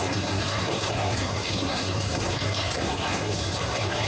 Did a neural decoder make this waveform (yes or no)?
yes